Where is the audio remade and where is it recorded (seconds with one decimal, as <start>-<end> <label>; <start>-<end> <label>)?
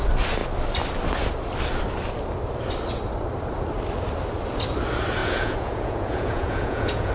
0.0-5.2 recorded; 5.2-7.1 remade